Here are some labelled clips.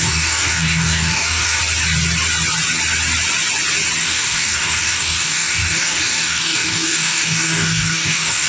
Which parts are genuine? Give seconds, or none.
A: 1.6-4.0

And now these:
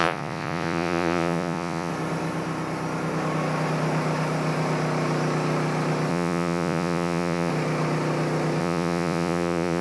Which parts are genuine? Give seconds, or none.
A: 1.9-6.1; 7.5-8.6

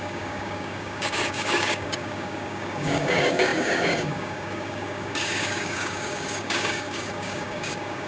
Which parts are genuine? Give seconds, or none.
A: none

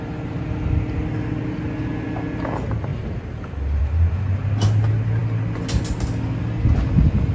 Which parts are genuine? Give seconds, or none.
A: 0.0-7.3

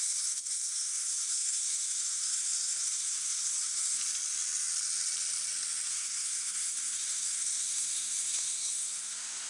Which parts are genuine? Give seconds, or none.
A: 4.0-5.9

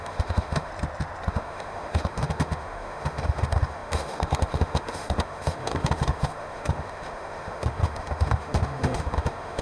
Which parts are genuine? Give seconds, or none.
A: 0.7-1.3